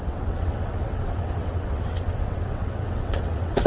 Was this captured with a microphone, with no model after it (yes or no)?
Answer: no